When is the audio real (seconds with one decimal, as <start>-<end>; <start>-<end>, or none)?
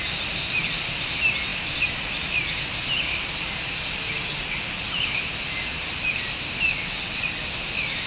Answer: 0.0-6.7; 7.3-8.1